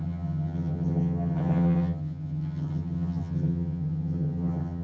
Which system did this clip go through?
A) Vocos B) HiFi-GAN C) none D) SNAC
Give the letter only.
B